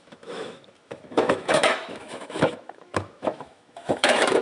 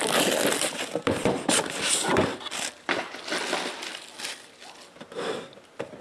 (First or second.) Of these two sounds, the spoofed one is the first